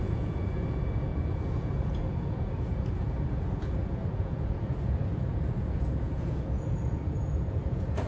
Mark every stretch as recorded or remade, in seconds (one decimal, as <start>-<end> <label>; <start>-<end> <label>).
0.0-8.1 remade